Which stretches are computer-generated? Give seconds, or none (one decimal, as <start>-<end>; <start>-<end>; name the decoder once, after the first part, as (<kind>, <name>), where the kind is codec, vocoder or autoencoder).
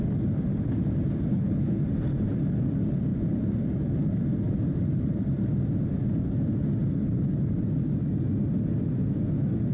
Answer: 1.3-1.8 (codec, HILCodec)